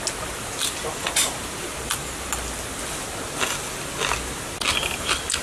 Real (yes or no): yes